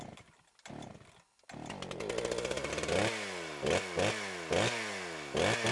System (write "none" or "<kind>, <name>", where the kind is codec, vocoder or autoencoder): none